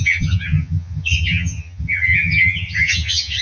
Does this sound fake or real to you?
fake